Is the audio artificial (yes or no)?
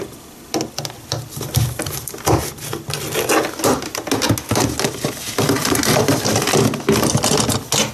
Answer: no